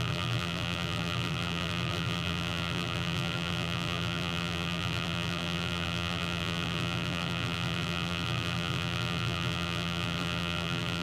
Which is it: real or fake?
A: fake